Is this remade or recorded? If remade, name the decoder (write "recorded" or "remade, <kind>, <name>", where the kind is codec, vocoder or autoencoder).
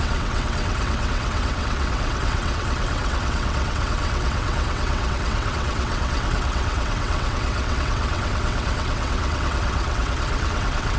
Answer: remade, vocoder, WaveNeXt